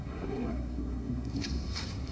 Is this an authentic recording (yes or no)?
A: no